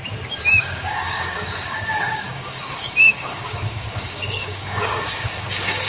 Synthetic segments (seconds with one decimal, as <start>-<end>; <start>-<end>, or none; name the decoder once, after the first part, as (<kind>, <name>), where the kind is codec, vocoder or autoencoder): 0.6-5.9 (codec, DAC)